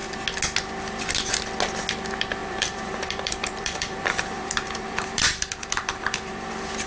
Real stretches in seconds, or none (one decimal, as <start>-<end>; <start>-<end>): 0.0-2.4; 6.5-6.9